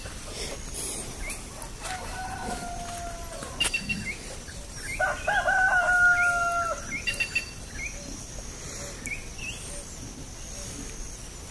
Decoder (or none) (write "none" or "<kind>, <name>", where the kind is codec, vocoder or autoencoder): none